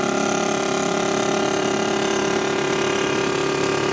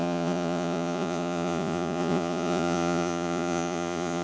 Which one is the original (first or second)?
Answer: first